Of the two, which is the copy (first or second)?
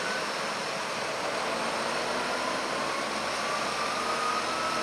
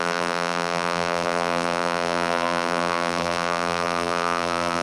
second